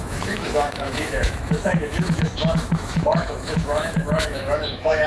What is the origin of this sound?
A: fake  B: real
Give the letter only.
A